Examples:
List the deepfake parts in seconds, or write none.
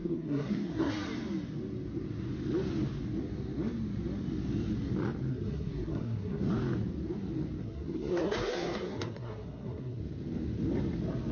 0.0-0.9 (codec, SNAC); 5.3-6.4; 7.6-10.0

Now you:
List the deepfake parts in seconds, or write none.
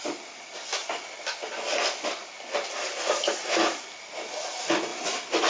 0.8-3.4 (vocoder, BigVGAN v2); 4.9-5.5